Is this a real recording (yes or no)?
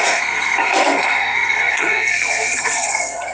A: no